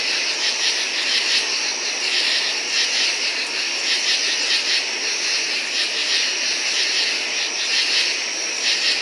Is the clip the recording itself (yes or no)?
yes